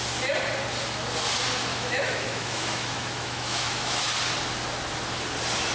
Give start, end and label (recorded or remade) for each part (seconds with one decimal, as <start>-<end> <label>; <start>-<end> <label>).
0.0-1.7 recorded; 1.7-4.1 remade; 4.1-5.7 recorded